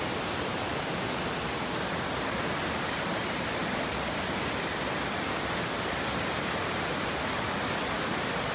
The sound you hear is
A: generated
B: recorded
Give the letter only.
B